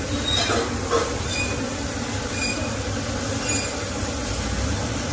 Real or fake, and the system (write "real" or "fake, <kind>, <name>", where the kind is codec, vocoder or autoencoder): real